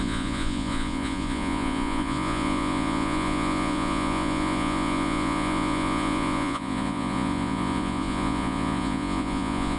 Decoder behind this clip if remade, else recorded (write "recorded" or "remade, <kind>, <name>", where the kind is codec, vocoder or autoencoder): remade, vocoder, Vocos